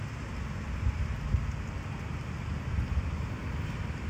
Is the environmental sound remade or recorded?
recorded